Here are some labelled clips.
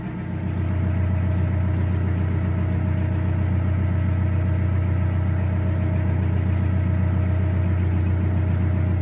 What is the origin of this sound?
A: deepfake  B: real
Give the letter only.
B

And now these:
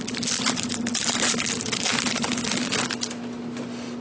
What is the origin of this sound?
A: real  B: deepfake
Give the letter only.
A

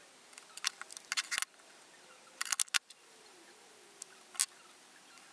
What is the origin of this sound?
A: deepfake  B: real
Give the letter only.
B